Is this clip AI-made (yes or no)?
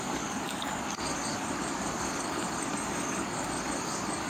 yes